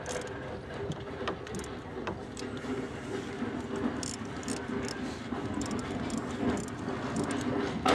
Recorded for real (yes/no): yes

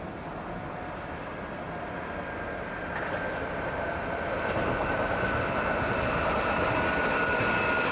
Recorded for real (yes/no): yes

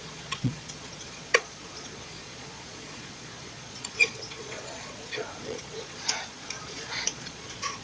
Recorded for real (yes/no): no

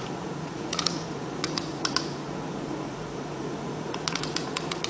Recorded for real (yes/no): no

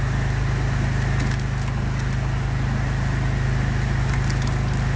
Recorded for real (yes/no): yes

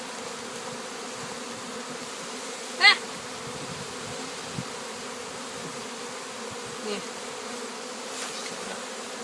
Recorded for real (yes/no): yes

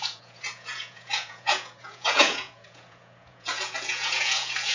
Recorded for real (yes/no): no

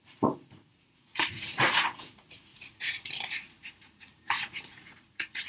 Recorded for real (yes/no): no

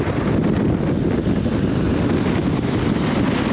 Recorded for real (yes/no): yes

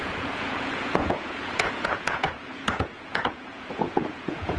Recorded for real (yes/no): no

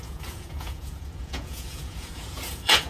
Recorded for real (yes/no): no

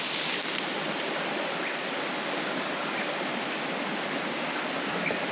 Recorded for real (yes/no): yes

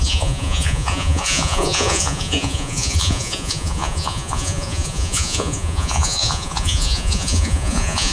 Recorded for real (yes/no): no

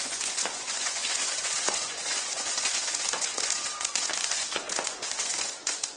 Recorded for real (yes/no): no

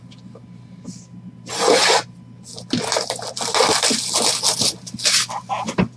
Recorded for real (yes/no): yes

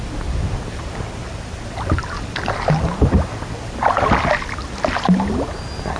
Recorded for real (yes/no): yes